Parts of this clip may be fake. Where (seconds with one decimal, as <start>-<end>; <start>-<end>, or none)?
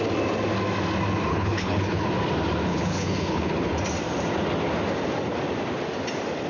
1.3-2.1; 2.7-3.7